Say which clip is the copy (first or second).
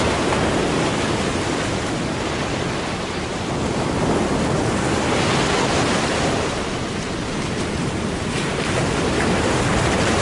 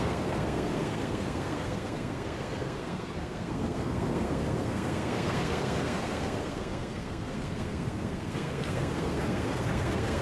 second